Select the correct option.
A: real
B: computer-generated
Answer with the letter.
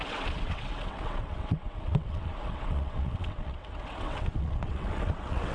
B